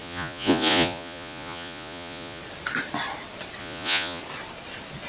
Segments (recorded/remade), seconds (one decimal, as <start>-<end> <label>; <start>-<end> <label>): 0.0-2.4 remade; 2.4-3.6 recorded; 3.6-4.2 remade; 4.2-5.1 recorded

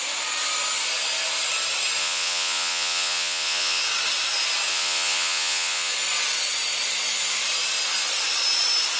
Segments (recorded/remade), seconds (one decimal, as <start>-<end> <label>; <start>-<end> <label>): 0.0-2.0 recorded; 2.0-3.8 remade; 3.8-4.7 recorded; 4.7-5.9 remade; 5.9-9.0 recorded